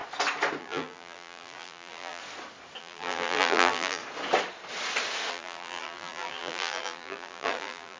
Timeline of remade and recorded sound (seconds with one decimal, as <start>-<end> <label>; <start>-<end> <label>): 0.0-0.6 recorded; 0.6-2.2 remade; 2.2-2.8 recorded; 2.8-4.0 remade; 4.0-5.3 recorded; 5.3-8.0 remade

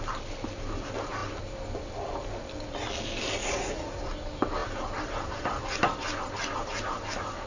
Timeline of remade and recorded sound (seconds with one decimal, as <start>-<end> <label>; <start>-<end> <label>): 0.0-3.4 recorded; 3.4-4.0 remade; 4.0-7.5 recorded

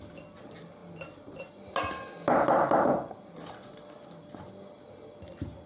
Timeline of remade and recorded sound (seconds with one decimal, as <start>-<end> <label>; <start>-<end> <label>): 0.0-5.7 recorded